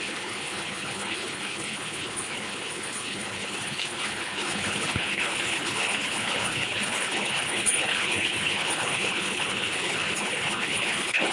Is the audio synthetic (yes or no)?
yes